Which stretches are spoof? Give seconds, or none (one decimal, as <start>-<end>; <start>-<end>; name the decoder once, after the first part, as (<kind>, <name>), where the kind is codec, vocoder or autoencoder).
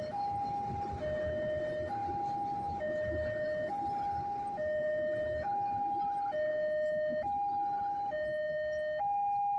none